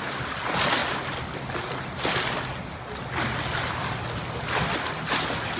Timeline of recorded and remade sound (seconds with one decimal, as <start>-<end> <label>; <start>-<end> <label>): 0.0-5.6 recorded